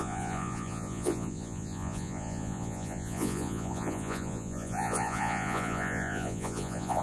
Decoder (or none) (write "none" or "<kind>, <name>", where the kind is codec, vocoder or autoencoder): vocoder, Vocos